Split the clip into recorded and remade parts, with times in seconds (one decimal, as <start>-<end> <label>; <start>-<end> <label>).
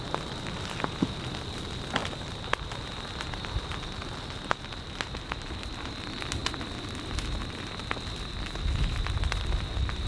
0.0-10.1 recorded